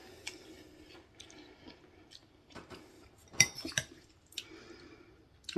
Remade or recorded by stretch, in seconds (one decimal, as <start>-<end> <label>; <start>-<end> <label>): 0.0-2.2 recorded; 2.2-4.4 remade; 4.4-5.6 recorded